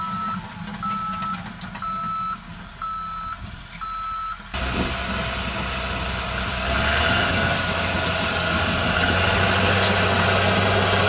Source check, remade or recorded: recorded